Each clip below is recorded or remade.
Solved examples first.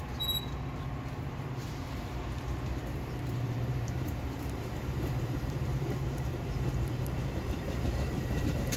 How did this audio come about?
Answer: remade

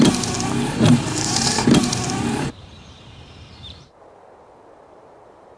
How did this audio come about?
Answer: remade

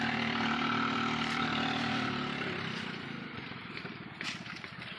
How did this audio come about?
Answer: remade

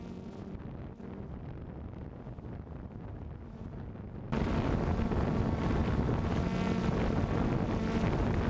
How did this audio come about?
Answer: recorded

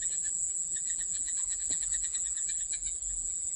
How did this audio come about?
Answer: remade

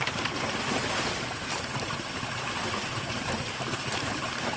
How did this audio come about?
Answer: remade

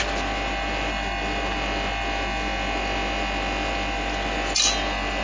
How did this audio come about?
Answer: recorded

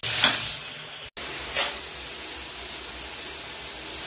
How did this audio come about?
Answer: recorded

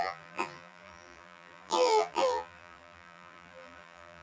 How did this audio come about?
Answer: remade